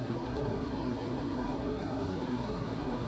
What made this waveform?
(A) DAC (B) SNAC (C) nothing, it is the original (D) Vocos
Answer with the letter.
B